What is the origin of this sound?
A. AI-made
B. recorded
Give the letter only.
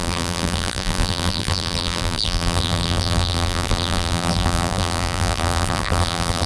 A